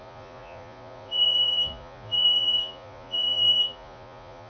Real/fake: fake